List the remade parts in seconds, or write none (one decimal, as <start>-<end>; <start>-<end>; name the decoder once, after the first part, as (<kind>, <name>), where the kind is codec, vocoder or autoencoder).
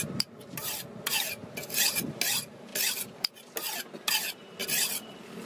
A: 2.7-3.3 (vocoder, BigVGAN v2)